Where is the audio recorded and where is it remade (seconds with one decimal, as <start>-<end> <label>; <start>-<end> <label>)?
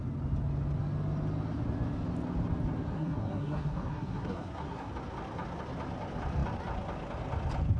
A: 0.0-2.9 recorded; 2.9-4.9 remade; 4.9-7.8 recorded